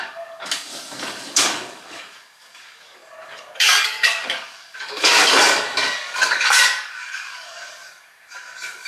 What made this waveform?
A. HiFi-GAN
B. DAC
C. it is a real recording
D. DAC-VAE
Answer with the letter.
B